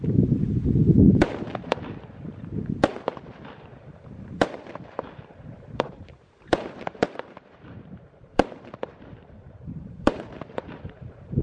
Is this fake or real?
fake